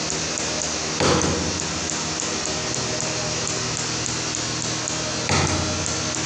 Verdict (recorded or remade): recorded